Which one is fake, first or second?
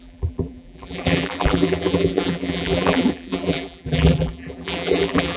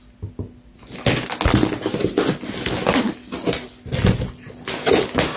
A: first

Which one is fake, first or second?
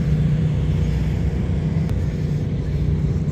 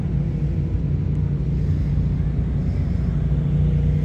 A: first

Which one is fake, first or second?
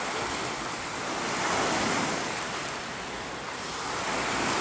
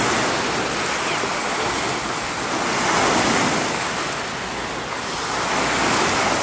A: first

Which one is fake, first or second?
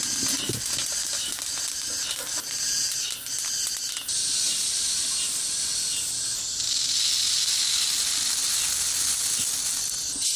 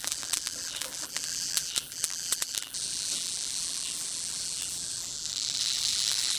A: second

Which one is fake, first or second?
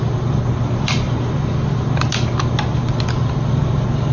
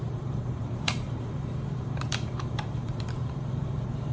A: second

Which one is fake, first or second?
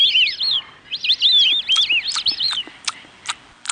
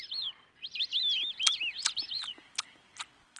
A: second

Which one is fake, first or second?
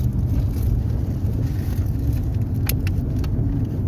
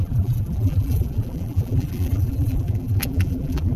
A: second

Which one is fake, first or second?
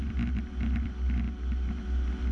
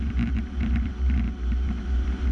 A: second